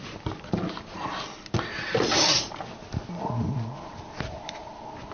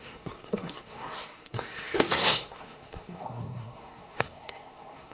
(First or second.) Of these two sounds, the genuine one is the first